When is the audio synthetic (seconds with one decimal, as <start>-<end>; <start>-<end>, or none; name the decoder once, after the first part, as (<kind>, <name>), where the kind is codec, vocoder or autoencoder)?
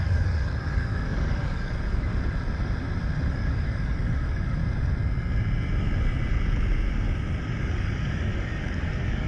0.0-2.1 (codec, DAC); 3.3-4.6; 7.6-9.3